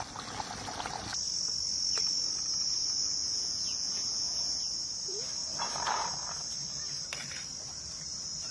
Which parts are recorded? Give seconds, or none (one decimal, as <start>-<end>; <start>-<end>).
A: 0.0-3.2; 4.6-8.5